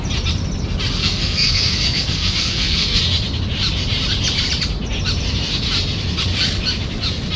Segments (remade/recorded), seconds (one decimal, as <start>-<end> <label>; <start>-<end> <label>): 0.0-1.0 recorded; 1.0-3.0 remade; 3.0-7.4 recorded